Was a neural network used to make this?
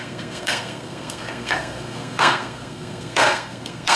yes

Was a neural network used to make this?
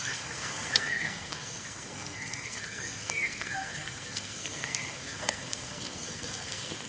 yes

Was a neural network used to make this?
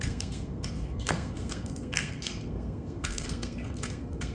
yes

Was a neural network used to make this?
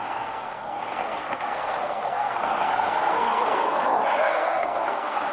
yes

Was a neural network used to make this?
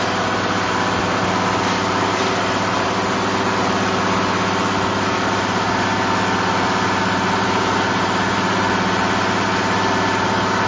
no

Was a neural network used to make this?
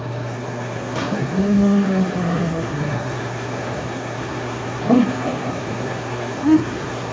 yes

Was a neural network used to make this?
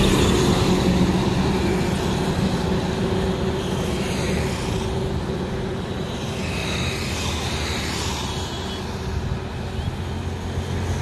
no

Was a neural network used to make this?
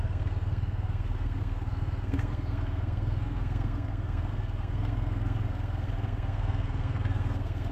yes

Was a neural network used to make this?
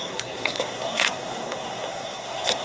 yes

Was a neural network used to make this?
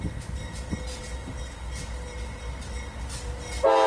no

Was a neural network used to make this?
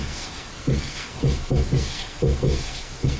yes